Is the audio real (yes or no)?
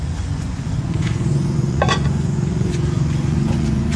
no